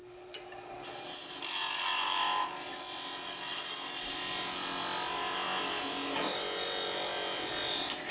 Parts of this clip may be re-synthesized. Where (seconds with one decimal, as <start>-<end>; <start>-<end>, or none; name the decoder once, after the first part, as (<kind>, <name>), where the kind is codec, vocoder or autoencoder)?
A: 0.0-0.7 (vocoder, BigVGAN v2)